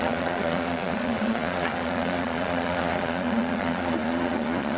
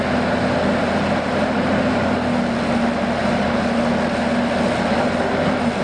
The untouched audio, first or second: second